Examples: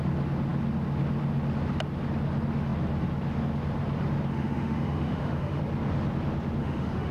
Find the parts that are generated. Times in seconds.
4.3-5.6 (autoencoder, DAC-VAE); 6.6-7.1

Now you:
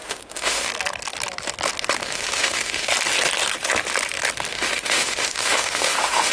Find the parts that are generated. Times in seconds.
0.0-0.7 (autoencoder, DAC-VAE); 2.0-2.9; 4.5-6.3

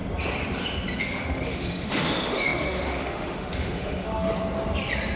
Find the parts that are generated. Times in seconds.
1.0-4.3 (autoencoder, DAC-VAE)